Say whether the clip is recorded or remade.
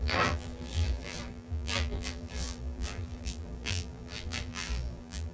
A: remade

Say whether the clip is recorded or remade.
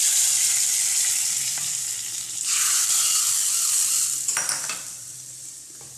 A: remade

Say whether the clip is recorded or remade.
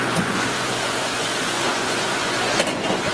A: remade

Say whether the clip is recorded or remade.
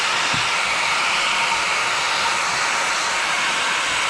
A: recorded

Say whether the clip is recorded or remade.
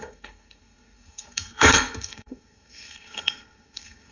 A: remade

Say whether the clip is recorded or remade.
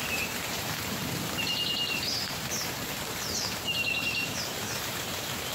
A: remade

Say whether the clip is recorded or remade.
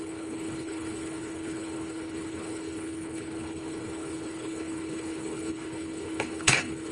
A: remade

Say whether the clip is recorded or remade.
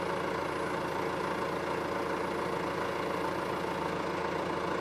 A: recorded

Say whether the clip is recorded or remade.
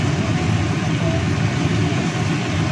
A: recorded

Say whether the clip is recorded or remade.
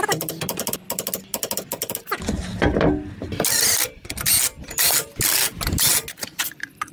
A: recorded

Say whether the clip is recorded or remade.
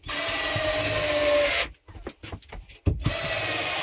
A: recorded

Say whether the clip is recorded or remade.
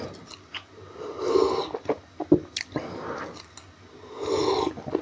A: recorded